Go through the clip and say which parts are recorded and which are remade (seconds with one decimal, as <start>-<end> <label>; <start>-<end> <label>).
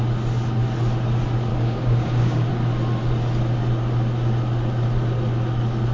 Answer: 0.0-1.5 recorded; 1.5-2.5 remade; 2.5-5.9 recorded